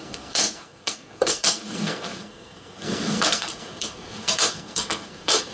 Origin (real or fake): fake